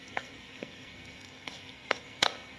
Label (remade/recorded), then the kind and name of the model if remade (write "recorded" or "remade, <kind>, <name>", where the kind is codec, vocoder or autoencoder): remade, codec, SNAC